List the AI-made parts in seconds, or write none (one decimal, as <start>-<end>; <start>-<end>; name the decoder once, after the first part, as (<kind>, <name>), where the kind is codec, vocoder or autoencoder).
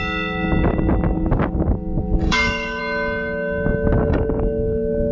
2.2-2.8 (codec, DAC); 4.0-5.1